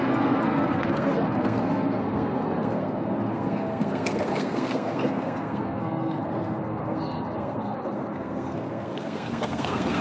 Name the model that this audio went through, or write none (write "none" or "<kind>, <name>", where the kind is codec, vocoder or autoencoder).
codec, SNAC